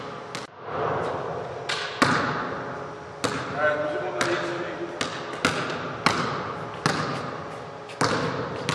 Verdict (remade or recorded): recorded